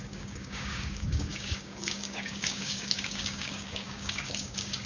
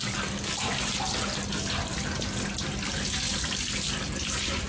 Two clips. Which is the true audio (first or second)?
second